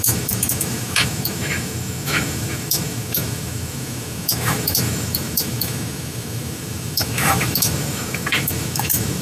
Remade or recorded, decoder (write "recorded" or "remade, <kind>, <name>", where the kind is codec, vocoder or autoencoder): remade, autoencoder, DAC-VAE